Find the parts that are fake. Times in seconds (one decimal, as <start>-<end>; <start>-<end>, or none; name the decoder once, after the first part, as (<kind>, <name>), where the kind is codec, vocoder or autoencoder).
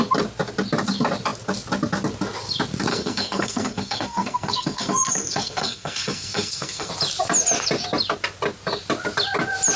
2.9-6.9 (codec, SNAC)